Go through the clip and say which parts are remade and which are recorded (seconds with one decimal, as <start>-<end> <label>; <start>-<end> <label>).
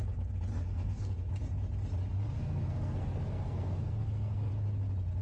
0.0-0.5 recorded; 0.5-1.3 remade; 1.3-2.1 recorded; 2.1-4.5 remade; 4.5-5.2 recorded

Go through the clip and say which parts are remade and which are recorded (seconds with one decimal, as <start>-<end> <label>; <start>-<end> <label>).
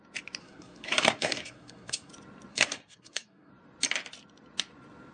0.0-0.4 recorded; 0.4-2.1 remade; 2.1-2.5 recorded; 2.5-3.5 remade; 3.5-5.1 recorded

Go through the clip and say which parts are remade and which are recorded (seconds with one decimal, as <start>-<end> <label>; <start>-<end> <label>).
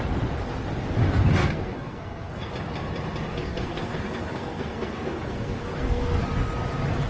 0.0-1.4 recorded; 1.4-2.5 remade; 2.5-3.3 recorded; 3.3-6.2 remade; 6.2-7.1 recorded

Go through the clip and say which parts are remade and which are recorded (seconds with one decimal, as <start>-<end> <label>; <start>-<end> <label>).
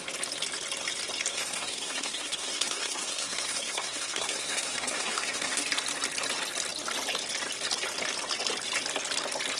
0.0-1.3 recorded; 1.3-5.6 remade; 5.6-9.6 recorded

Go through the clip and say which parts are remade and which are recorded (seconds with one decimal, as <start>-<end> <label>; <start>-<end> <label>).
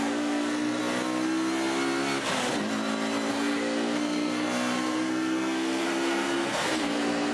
0.0-0.8 remade; 0.8-3.3 recorded; 3.3-7.3 remade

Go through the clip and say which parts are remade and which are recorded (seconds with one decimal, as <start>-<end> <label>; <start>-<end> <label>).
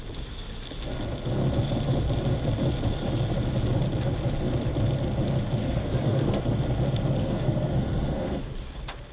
0.0-5.6 recorded; 5.6-6.4 remade; 6.4-7.2 recorded; 7.2-8.4 remade; 8.4-9.1 recorded